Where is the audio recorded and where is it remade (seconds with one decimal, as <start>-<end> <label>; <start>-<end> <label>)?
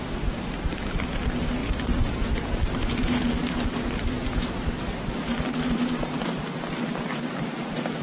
0.0-1.6 recorded; 1.6-6.3 remade; 6.3-8.0 recorded